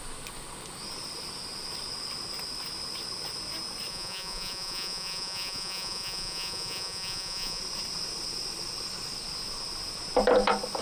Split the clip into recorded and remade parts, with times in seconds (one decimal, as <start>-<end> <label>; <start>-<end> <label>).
0.0-3.9 recorded; 3.9-7.6 remade; 7.6-10.8 recorded